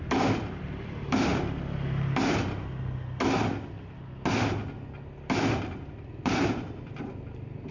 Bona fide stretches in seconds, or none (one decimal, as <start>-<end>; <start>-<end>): 1.3-5.9